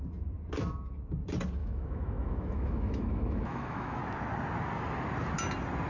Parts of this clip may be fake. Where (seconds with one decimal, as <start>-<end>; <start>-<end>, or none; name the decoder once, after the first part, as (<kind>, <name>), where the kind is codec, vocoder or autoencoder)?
1.6-4.0 (autoencoder, DAC-VAE)